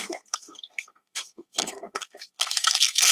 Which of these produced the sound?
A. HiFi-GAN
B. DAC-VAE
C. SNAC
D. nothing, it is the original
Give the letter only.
C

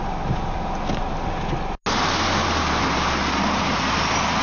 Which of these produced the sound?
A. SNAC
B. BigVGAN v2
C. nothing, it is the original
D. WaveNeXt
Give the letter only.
C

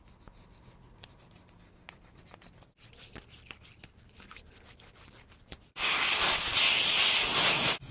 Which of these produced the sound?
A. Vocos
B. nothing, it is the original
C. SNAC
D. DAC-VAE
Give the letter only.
B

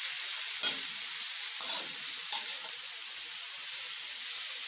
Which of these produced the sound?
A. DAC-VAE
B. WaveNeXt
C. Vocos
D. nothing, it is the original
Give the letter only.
D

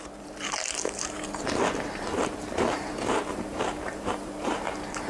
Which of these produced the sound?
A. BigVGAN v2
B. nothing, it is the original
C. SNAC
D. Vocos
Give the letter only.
A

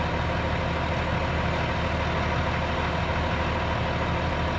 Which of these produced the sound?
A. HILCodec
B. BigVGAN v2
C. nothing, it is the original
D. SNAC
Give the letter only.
C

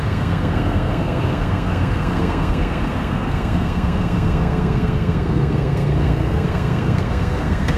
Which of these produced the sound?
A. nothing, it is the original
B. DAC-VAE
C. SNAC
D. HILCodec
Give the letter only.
C